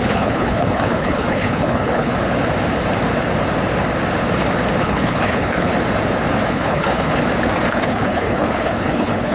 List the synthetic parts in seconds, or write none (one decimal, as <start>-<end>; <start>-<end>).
0.0-2.1; 4.8-5.7; 6.5-7.2; 7.7-9.3